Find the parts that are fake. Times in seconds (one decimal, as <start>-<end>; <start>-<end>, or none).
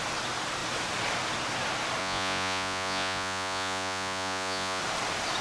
2.0-4.8